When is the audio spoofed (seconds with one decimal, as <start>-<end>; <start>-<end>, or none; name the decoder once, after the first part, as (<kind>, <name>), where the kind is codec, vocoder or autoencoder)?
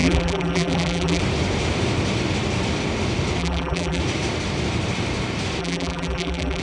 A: 0.0-1.2 (vocoder, BigVGAN v2); 3.4-4.0; 5.6-6.6